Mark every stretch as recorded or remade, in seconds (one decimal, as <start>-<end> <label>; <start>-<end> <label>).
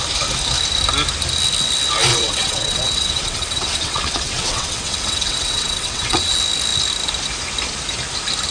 0.0-2.1 recorded; 2.1-6.3 remade; 6.3-8.5 recorded